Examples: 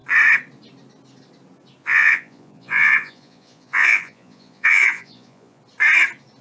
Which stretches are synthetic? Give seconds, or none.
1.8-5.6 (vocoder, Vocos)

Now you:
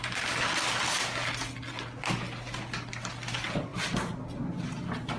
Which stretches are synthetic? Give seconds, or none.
none

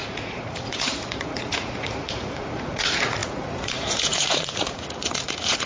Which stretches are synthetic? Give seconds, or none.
0.0-5.7 (vocoder, Vocos)

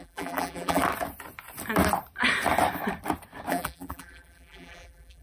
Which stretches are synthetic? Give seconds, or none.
0.0-0.8 (vocoder, BigVGAN v2); 3.5-5.2

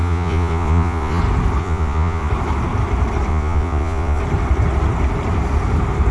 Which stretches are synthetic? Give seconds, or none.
0.0-1.2 (vocoder, Vocos); 1.6-2.3; 3.3-4.2

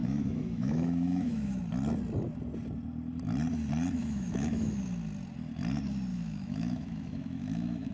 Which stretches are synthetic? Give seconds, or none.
0.0-1.6 (autoencoder, DAC-VAE); 4.0-4.7; 6.1-7.9